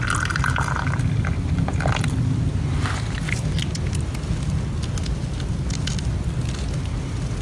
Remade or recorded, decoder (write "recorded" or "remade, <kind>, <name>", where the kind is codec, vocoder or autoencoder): recorded